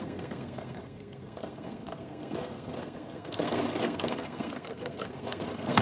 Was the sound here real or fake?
fake